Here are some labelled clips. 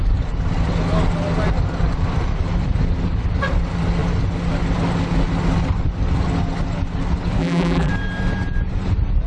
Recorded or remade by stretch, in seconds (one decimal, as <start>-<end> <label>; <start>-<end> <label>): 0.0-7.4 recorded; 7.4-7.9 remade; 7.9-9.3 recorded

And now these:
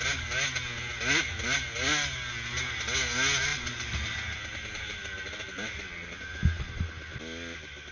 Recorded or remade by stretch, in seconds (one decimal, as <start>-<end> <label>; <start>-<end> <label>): 0.0-3.5 recorded; 3.5-4.0 remade; 4.0-7.9 recorded

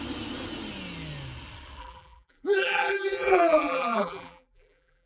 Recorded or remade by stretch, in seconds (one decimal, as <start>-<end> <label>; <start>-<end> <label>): 0.0-1.8 recorded; 1.8-5.1 remade

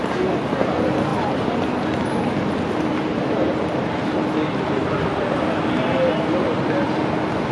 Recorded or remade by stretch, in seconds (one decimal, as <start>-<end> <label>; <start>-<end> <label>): 0.0-7.5 recorded